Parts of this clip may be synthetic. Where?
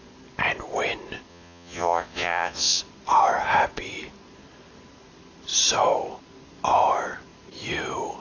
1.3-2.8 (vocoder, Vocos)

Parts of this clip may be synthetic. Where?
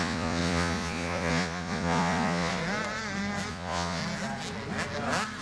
0.0-2.6 (vocoder, Vocos); 3.5-4.0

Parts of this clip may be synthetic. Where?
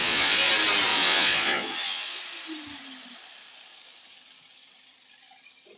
0.0-0.5 (vocoder, Vocos); 0.9-2.2